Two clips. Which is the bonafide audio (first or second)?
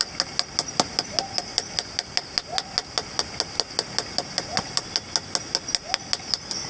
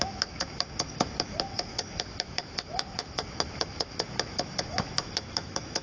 first